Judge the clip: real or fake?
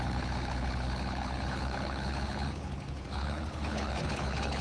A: fake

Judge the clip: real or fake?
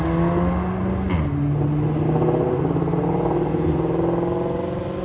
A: real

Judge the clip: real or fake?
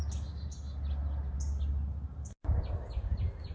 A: real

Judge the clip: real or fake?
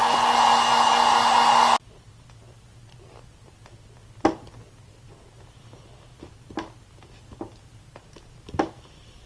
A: real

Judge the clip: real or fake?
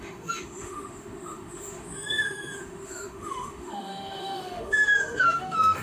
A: fake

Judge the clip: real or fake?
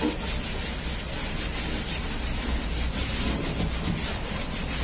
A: real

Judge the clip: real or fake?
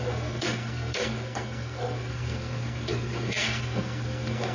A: fake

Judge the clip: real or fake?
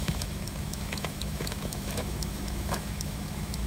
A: fake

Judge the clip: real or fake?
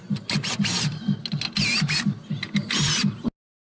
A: real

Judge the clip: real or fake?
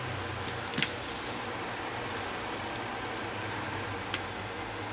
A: real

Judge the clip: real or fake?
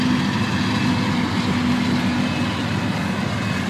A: real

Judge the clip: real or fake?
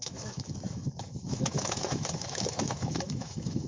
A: fake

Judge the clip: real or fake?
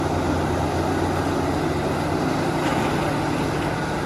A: real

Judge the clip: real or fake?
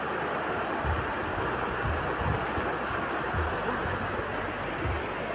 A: real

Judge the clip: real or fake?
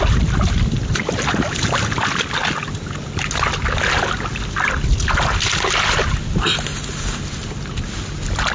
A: real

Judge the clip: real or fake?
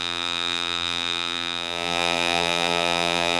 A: fake